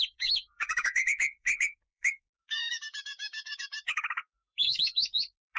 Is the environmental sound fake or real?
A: fake